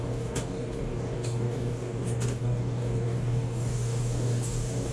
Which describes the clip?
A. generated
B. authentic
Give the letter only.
A